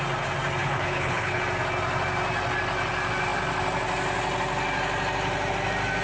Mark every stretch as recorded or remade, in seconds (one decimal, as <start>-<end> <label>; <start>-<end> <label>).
0.0-0.6 recorded; 0.6-1.4 remade; 1.4-6.0 recorded